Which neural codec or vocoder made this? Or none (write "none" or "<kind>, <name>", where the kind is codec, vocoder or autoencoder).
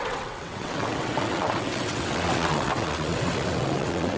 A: vocoder, WaveNeXt